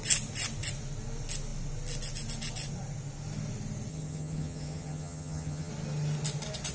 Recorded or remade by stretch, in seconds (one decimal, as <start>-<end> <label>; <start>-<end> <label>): 0.0-3.9 recorded; 3.9-5.7 remade; 5.7-6.7 recorded